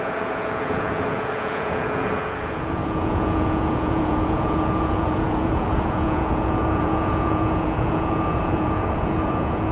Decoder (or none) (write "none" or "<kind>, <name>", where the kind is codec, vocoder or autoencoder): vocoder, Vocos